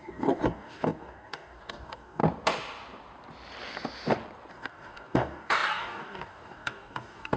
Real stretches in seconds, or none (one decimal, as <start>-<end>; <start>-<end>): 2.2-4.5